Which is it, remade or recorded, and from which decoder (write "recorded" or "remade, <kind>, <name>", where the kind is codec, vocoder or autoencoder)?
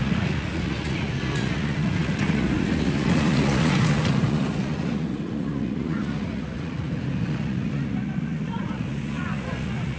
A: remade, vocoder, Vocos